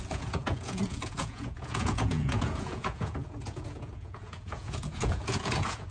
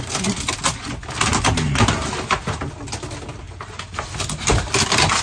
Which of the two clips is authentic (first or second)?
second